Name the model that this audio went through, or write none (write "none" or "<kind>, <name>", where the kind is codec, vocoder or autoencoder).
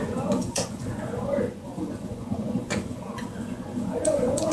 vocoder, Vocos